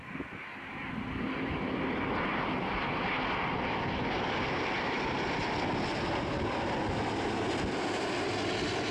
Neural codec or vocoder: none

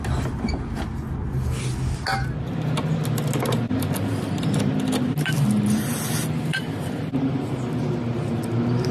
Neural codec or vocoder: none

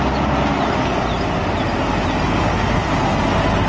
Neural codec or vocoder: none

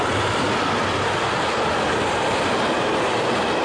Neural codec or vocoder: vocoder, BigVGAN v2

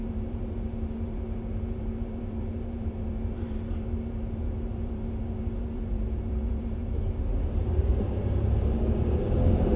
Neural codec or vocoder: vocoder, BigVGAN v2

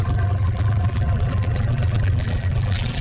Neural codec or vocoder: vocoder, BigVGAN v2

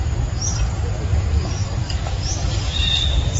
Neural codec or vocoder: none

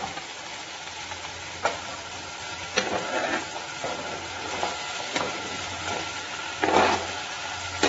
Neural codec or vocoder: none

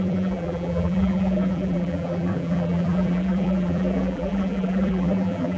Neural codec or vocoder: vocoder, BigVGAN v2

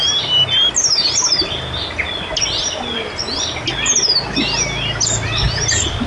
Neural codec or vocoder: none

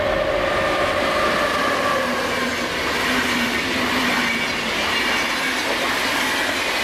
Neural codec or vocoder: none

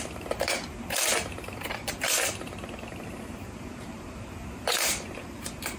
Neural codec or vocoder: vocoder, BigVGAN v2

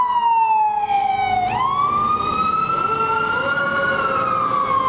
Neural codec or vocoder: none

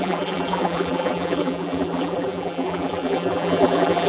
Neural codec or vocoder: vocoder, BigVGAN v2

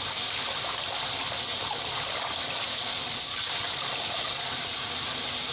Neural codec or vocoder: none